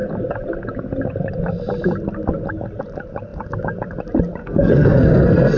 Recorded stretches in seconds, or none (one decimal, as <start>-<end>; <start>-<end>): 0.0-4.4